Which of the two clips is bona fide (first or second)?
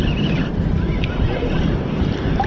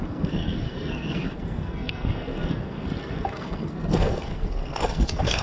first